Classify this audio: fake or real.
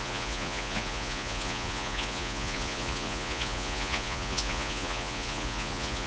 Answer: fake